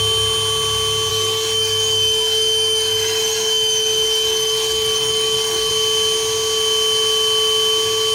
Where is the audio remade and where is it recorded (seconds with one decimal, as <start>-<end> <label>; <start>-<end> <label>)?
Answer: 0.0-1.1 recorded; 1.1-5.7 remade; 5.7-8.1 recorded